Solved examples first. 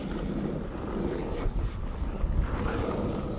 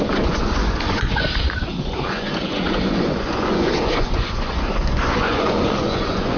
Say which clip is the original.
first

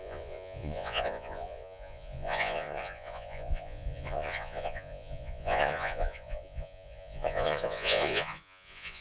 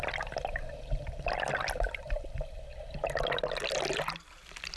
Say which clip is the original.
second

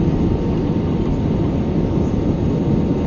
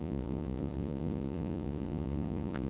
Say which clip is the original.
first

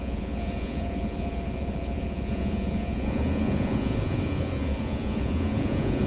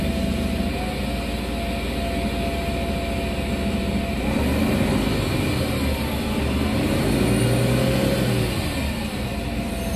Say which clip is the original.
second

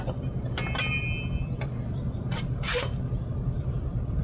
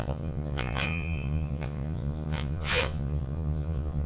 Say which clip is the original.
first